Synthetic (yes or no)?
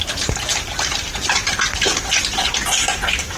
no